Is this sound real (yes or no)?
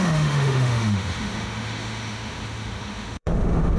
no